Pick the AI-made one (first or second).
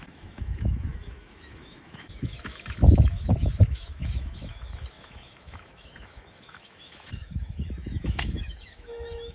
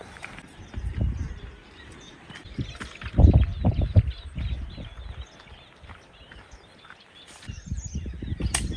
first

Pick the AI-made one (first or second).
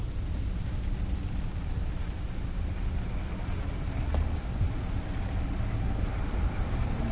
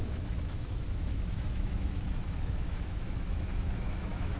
second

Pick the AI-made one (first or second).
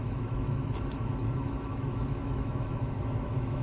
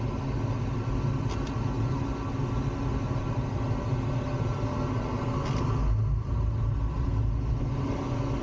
first